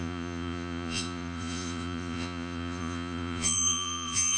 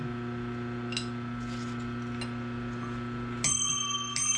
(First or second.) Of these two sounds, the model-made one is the first